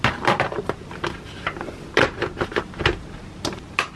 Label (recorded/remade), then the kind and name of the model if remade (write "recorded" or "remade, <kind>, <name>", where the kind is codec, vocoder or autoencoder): recorded